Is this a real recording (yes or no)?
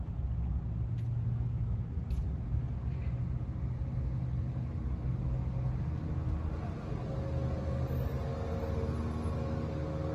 yes